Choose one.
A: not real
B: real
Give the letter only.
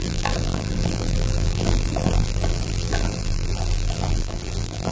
A